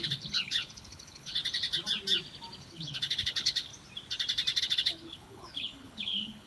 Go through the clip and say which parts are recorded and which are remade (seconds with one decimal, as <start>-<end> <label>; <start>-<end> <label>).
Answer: 0.0-1.4 remade; 1.4-2.6 recorded; 2.6-3.7 remade; 3.7-4.6 recorded; 4.6-6.5 remade